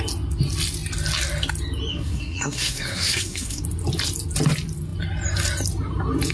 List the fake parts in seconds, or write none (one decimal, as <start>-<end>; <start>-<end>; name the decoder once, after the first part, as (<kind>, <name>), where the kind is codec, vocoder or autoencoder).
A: 1.9-3.6 (codec, SNAC)